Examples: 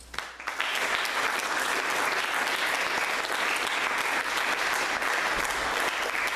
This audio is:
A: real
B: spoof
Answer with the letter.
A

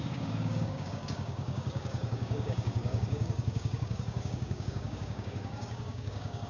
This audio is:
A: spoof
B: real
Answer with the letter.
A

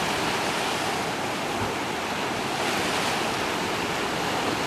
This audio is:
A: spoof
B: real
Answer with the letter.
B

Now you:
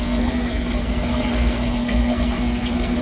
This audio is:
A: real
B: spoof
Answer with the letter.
B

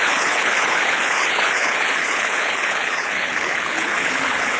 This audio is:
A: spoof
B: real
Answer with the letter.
A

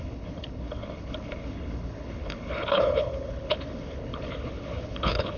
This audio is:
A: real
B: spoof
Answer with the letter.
B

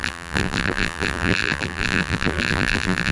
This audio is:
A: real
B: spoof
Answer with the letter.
B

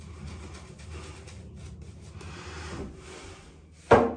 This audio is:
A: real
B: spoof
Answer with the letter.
A